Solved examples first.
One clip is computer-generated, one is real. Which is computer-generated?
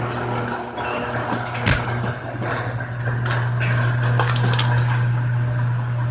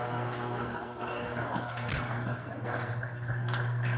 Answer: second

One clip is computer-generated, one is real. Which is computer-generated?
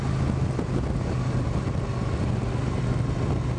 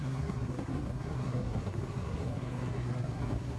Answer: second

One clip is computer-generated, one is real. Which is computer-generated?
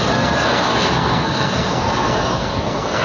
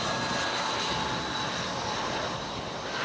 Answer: first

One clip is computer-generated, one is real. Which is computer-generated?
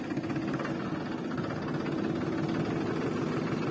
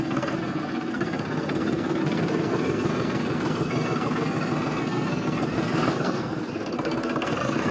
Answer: second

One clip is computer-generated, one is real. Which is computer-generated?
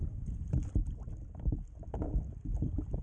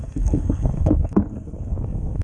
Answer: second